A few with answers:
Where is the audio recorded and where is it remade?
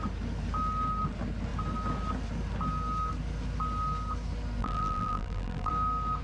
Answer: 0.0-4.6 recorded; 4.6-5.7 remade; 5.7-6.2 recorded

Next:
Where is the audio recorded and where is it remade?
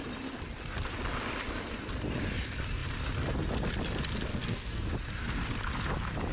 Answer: 0.0-4.3 recorded; 4.3-4.9 remade; 4.9-6.3 recorded